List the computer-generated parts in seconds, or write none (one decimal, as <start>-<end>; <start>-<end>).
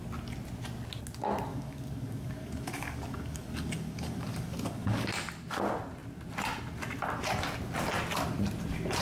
1.5-5.1